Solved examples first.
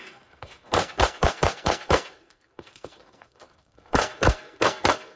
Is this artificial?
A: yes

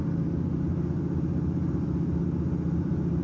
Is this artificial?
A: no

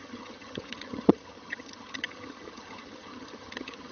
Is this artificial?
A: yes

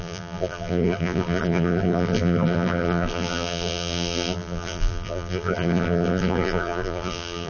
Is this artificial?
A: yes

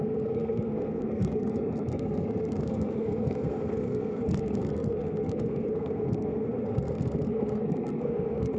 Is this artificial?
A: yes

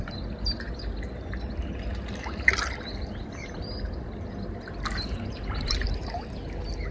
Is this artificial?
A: no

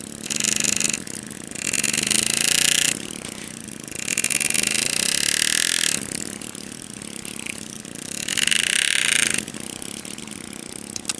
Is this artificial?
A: no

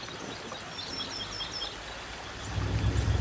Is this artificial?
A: no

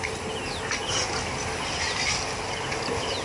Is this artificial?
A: no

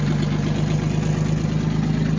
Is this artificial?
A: no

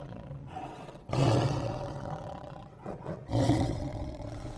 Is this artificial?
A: yes